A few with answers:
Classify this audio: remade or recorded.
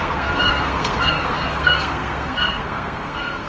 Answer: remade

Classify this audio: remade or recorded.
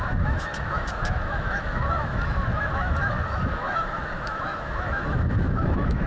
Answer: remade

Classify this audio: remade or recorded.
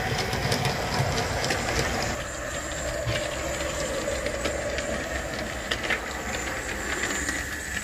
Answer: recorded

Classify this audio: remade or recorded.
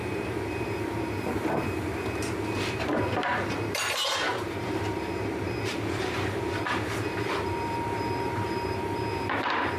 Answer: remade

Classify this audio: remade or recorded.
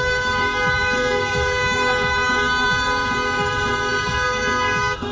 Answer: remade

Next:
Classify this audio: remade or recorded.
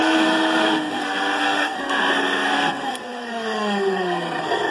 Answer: remade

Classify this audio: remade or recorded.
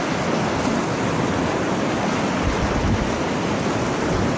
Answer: recorded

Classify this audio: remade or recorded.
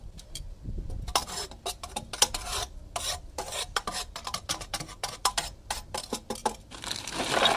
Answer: recorded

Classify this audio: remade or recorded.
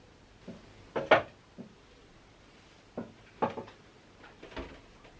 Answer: recorded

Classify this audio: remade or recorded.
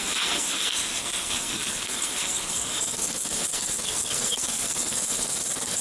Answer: remade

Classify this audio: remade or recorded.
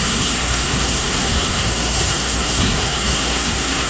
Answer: remade